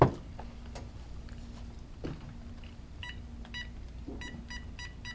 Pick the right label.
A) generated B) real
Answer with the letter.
B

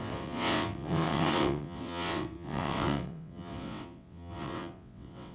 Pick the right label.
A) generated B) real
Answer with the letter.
A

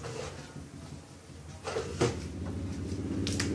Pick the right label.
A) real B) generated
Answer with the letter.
A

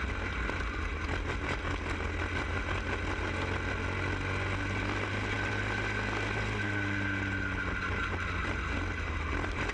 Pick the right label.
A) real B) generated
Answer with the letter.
A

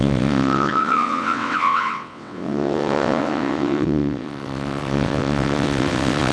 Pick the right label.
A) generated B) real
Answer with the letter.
A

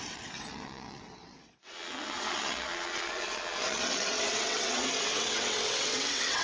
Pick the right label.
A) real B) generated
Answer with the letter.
B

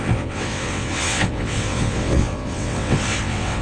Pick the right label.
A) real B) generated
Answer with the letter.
B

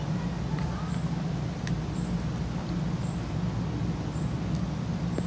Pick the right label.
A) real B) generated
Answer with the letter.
A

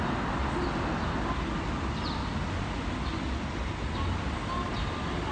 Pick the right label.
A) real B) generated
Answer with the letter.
A